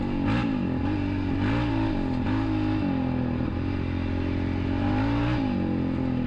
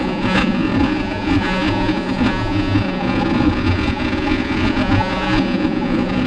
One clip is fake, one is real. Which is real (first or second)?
first